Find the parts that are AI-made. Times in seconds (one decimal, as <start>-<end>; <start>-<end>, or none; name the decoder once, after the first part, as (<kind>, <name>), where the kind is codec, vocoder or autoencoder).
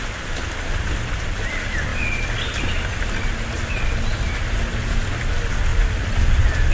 5.7-6.7 (vocoder, BigVGAN v2)